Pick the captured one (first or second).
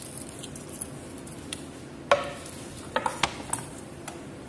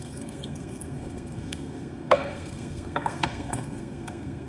first